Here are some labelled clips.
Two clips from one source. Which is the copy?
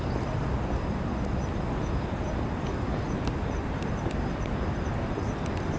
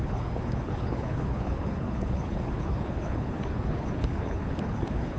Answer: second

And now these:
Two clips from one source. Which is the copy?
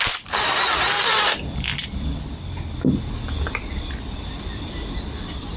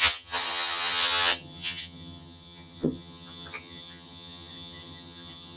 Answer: second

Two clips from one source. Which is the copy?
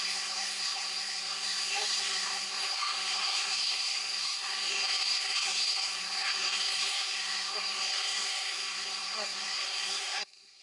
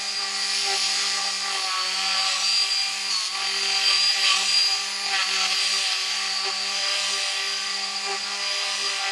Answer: first